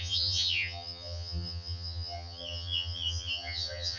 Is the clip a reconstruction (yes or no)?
yes